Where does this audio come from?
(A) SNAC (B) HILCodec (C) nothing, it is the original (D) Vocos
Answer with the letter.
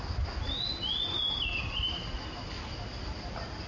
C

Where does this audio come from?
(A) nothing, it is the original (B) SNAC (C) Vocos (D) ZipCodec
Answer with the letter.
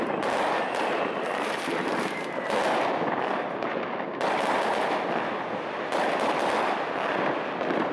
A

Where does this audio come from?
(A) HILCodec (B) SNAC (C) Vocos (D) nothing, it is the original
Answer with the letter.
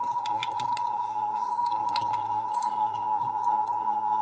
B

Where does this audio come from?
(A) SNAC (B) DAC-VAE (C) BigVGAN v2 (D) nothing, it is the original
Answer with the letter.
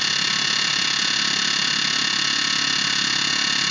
D